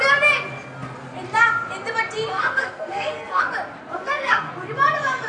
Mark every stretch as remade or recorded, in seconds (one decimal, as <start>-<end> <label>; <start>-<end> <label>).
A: 0.0-2.3 recorded; 2.3-3.4 remade; 3.4-3.9 recorded; 3.9-4.5 remade; 4.5-5.3 recorded